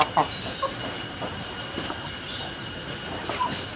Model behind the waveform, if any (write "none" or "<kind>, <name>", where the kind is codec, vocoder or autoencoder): none